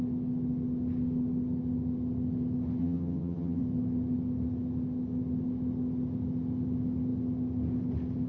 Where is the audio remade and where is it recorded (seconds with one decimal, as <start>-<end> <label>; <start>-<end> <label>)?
0.0-2.8 recorded; 2.8-3.6 remade; 3.6-8.3 recorded